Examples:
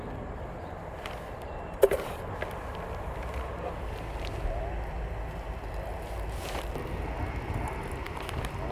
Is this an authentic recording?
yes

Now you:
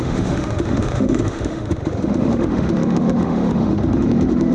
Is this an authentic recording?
no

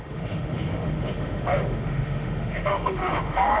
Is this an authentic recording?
no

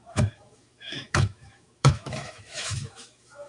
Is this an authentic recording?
no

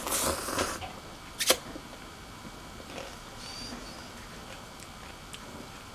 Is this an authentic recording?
yes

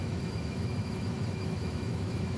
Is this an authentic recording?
no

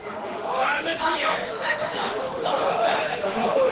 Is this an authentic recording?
no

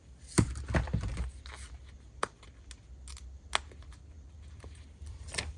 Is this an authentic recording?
yes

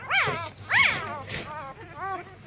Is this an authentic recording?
yes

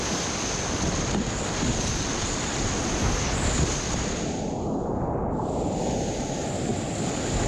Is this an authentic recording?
yes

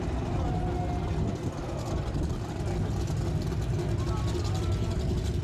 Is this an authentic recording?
yes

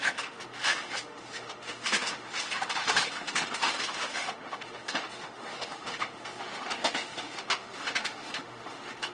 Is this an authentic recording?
no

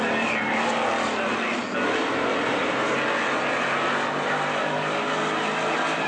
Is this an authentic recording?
yes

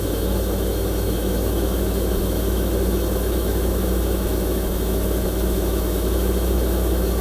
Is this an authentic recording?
no